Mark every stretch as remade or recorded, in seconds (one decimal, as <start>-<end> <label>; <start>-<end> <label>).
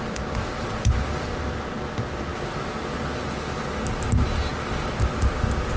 0.0-5.8 recorded